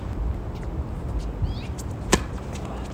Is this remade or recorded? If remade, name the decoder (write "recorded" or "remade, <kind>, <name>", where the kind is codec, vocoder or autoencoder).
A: recorded